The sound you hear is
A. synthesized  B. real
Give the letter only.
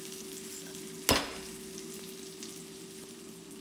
B